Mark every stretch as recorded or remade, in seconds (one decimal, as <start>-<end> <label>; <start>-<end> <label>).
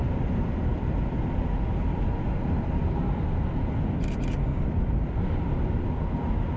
0.0-0.7 recorded; 0.7-1.3 remade; 1.3-4.5 recorded; 4.5-5.9 remade; 5.9-6.6 recorded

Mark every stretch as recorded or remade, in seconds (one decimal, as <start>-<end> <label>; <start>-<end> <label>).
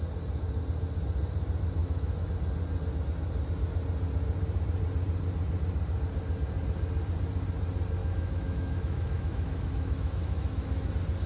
0.0-1.8 recorded; 1.8-2.3 remade; 2.3-8.0 recorded; 8.0-10.9 remade; 10.9-11.3 recorded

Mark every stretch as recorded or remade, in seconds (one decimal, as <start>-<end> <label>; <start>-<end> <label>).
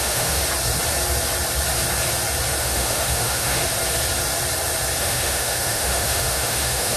0.0-0.4 remade; 0.4-2.6 recorded; 2.6-3.6 remade; 3.6-5.0 recorded; 5.0-7.0 remade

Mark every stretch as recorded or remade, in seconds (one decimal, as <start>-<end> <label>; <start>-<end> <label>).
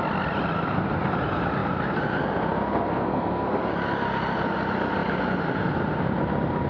0.0-2.9 recorded; 2.9-3.6 remade; 3.6-6.7 recorded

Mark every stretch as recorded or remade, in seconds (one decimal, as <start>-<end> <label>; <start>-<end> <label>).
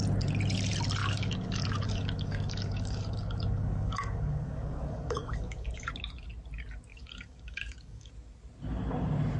0.0-1.0 recorded; 1.0-5.9 remade; 5.9-6.9 recorded; 6.9-8.1 remade; 8.1-9.4 recorded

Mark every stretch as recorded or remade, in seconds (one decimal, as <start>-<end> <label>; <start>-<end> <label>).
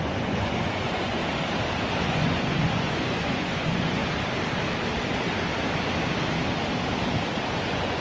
0.0-1.2 remade; 1.2-2.0 recorded; 2.0-4.0 remade; 4.0-7.6 recorded; 7.6-8.0 remade